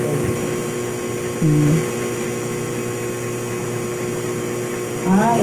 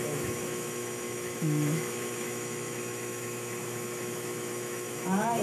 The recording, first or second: first